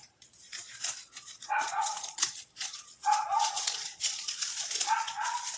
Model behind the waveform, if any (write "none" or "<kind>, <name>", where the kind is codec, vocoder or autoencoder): vocoder, Vocos